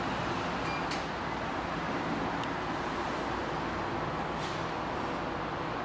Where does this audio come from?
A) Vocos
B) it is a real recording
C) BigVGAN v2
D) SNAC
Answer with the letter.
B